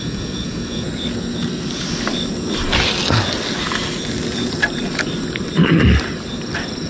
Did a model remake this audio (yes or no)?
no